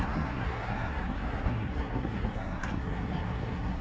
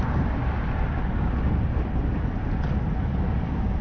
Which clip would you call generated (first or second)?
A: first